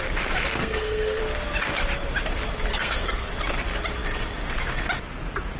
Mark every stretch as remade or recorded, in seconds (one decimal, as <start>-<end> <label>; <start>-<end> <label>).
0.0-0.6 recorded; 0.6-1.2 remade; 1.2-2.7 recorded; 2.7-3.3 remade; 3.3-5.6 recorded